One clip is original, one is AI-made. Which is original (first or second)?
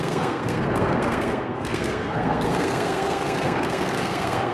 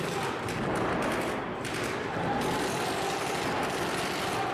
second